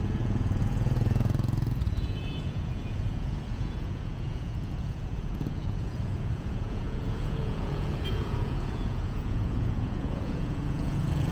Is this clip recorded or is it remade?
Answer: remade